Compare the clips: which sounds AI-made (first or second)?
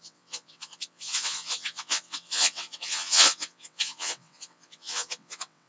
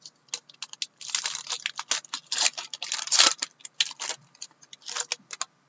first